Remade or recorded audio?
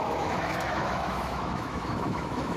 remade